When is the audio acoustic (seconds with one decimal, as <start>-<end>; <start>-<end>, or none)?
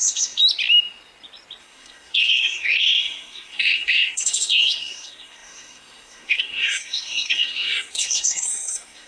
0.4-1.6